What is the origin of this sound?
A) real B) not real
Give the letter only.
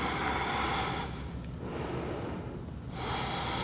A